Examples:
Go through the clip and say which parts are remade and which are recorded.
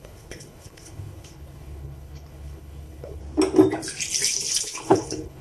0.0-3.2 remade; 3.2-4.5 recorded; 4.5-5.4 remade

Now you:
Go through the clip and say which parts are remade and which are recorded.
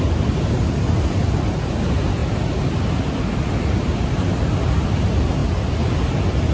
0.0-6.5 recorded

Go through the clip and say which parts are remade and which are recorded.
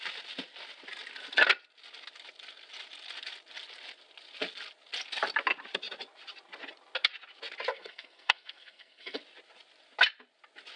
0.0-7.7 recorded; 7.7-9.2 remade; 9.2-10.8 recorded